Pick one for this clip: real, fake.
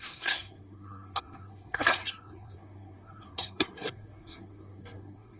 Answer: fake